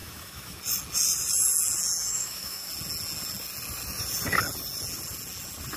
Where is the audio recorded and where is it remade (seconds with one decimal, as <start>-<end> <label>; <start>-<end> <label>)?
0.0-0.6 remade; 0.6-2.0 recorded; 2.0-2.7 remade; 2.7-5.8 recorded